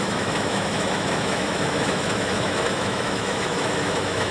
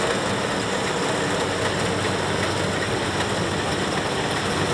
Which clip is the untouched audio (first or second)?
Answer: second